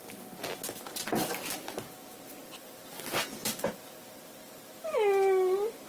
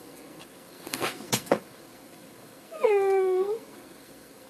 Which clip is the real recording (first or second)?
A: first